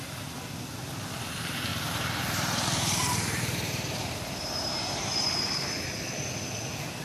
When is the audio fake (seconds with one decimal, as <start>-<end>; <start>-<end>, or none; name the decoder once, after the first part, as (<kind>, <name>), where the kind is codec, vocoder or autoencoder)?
1.7-5.9 (vocoder, BigVGAN v2)